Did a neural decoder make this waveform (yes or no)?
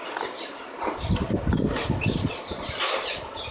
no